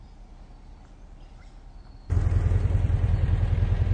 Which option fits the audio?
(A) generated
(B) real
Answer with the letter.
B